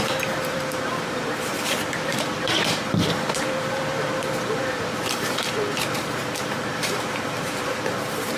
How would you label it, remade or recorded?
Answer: remade